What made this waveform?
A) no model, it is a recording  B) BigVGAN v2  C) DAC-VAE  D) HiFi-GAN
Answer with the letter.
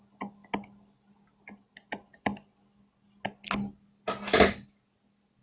A